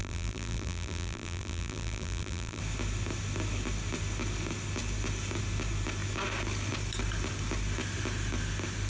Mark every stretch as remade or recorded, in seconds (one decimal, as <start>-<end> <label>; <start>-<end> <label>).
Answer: 0.0-2.6 remade; 2.6-8.9 recorded